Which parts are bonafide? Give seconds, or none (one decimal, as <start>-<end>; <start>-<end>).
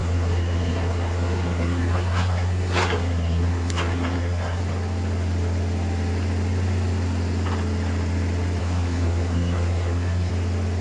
4.6-8.6; 10.3-10.8